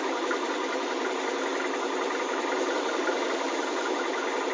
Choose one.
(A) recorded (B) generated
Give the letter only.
A